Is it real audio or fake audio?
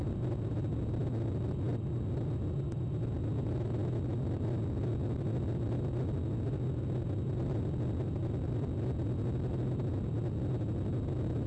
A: real